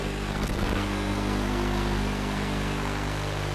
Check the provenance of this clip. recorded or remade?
remade